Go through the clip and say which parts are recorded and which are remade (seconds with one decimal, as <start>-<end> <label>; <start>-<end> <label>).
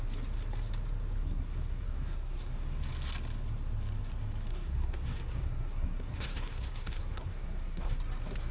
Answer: 0.0-1.2 recorded; 1.2-2.5 remade; 2.5-4.5 recorded; 4.5-8.0 remade; 8.0-8.5 recorded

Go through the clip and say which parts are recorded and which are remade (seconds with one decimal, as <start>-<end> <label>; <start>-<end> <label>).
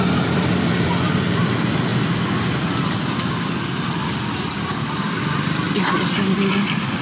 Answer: 0.0-7.0 recorded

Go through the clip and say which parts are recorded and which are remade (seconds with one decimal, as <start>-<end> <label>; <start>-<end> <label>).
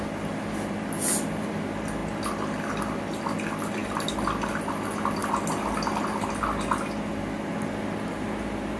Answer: 0.0-8.8 recorded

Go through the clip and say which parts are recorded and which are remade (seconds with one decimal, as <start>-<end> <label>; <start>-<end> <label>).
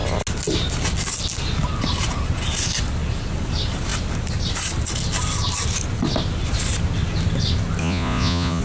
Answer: 0.0-7.8 recorded; 7.8-8.6 remade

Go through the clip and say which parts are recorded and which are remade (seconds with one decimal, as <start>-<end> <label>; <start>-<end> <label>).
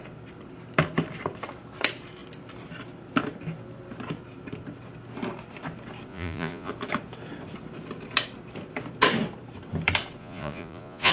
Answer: 0.0-6.1 recorded; 6.1-6.7 remade; 6.7-10.2 recorded; 10.2-11.1 remade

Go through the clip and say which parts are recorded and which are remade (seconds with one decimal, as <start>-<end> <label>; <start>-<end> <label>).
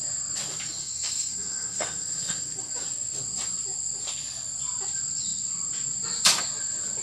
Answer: 0.0-0.8 recorded; 0.8-2.7 remade; 2.7-7.0 recorded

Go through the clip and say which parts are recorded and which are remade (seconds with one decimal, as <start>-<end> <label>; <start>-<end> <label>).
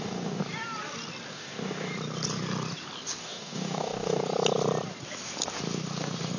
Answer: 0.0-0.4 remade; 0.4-1.3 recorded; 1.3-1.9 remade; 1.9-3.2 recorded; 3.2-4.2 remade; 4.2-6.4 recorded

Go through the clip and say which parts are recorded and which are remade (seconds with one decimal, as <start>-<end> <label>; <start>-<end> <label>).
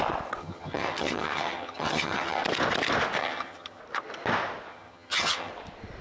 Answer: 0.0-0.4 recorded; 0.4-2.4 remade; 2.4-3.2 recorded; 3.2-3.8 remade; 3.8-4.7 recorded; 4.7-5.5 remade; 5.5-6.0 recorded